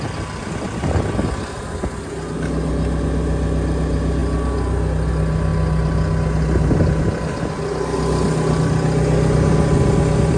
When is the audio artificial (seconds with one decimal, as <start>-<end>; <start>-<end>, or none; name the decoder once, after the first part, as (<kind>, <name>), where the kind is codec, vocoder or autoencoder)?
none